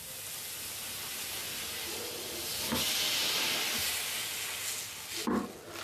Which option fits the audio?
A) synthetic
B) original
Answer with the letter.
B